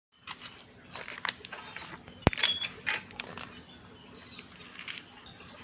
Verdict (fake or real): real